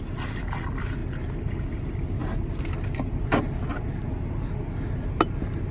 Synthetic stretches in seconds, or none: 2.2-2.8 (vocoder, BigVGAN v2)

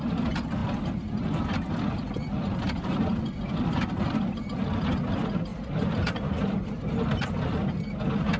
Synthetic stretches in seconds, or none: 0.6-4.4 (vocoder, BigVGAN v2)

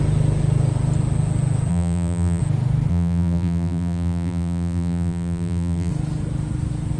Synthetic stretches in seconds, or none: 1.7-2.4 (vocoder, BigVGAN v2); 2.9-5.9

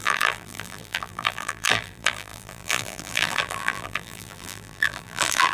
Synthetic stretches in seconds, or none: 0.0-5.5 (vocoder, BigVGAN v2)